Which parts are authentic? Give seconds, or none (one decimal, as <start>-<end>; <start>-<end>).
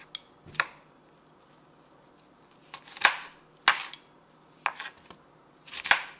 0.0-6.2